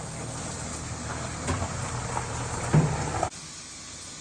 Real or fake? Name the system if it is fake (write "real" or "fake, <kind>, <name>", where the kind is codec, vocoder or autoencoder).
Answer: real